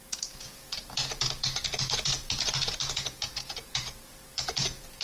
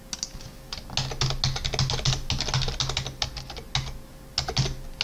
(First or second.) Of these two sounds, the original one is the second